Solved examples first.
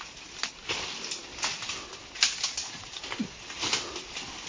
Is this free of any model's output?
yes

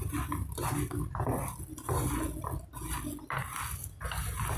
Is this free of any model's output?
yes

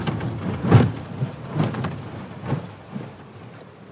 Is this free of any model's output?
yes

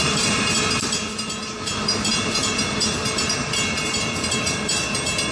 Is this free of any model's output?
no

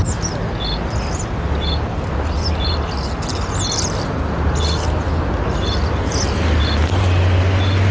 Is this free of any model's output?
yes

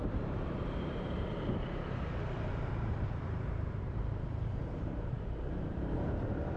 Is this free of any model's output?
no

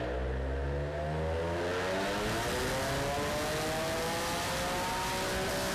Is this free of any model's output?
yes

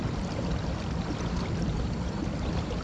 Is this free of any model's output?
no